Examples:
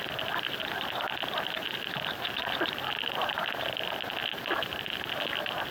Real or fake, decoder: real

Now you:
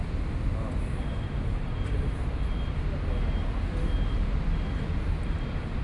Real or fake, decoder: real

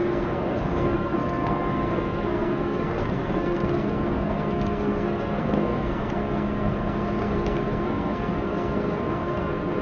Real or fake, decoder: fake, codec, SNAC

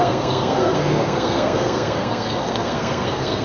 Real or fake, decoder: fake, codec, SNAC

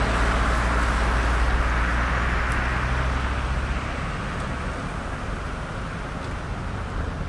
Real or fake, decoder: real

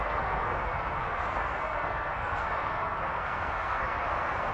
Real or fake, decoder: fake, codec, SNAC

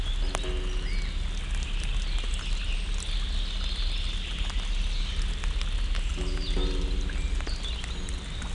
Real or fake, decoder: real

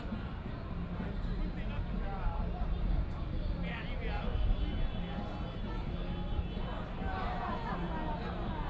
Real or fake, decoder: real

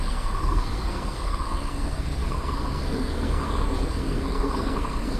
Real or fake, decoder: fake, codec, SNAC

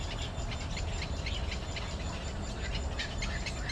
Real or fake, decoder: real